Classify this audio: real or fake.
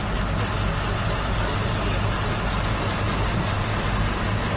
real